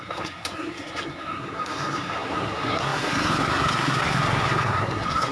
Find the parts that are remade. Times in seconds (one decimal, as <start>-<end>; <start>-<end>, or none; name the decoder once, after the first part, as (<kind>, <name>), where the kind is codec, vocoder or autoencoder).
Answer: 0.0-5.3 (codec, SNAC)